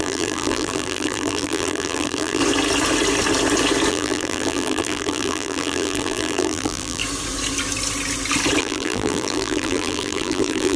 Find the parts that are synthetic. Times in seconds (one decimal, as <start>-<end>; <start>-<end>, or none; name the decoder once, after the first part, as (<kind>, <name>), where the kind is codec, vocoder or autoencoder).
0.0-2.4 (vocoder, BigVGAN v2); 3.9-7.0; 8.6-10.8